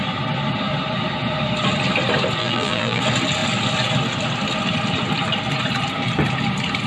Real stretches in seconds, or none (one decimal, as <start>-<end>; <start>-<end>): 0.0-2.4; 3.0-6.9